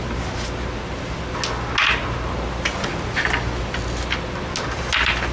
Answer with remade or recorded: recorded